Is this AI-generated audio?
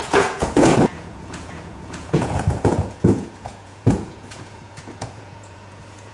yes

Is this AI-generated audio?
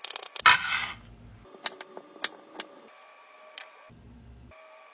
no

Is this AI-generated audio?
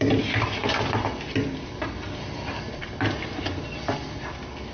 no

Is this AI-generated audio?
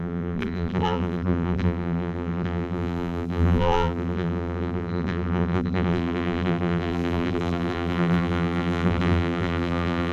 yes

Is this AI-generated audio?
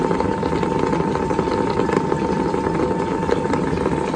no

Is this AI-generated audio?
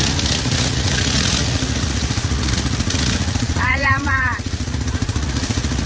yes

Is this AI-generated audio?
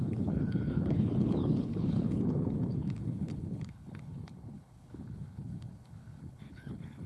yes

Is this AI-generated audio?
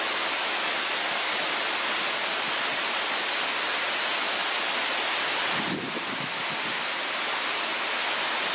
no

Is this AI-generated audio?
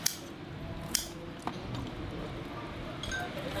no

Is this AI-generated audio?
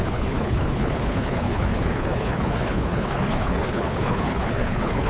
yes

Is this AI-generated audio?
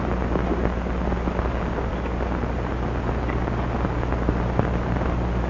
no